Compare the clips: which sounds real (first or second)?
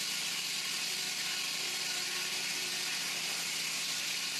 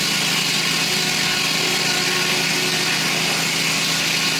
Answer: second